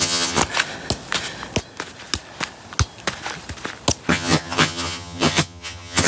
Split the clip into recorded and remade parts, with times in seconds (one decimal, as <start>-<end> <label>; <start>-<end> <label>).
0.0-0.4 remade; 0.4-4.1 recorded; 4.1-6.1 remade